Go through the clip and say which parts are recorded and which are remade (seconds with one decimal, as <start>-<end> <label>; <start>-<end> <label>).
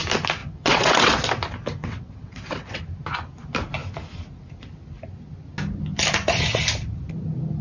0.0-0.4 recorded; 0.4-1.1 remade; 1.1-1.8 recorded; 1.8-2.8 remade; 2.8-7.6 recorded